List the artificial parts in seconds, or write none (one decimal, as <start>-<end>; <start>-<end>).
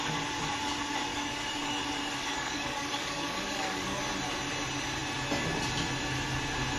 1.1-4.0